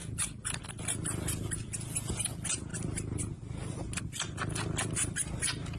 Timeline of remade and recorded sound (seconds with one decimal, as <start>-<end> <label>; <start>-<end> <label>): 0.0-5.8 recorded